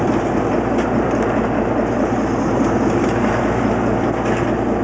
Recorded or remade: recorded